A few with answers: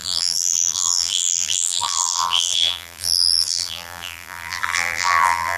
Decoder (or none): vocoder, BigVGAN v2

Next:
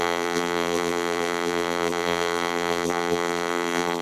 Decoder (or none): vocoder, BigVGAN v2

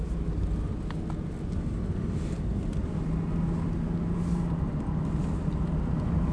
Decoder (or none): none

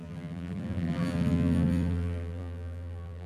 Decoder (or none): vocoder, BigVGAN v2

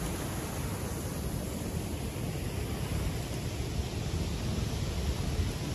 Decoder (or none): none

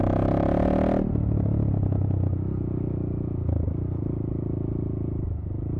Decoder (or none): none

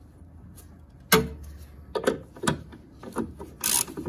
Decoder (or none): none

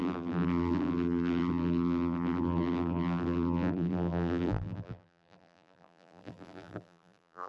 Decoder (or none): vocoder, BigVGAN v2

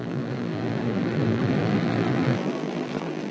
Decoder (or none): vocoder, BigVGAN v2